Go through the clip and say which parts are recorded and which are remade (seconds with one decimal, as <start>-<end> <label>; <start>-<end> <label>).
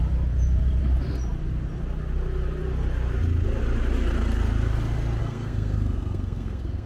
0.0-5.2 recorded; 5.2-6.9 remade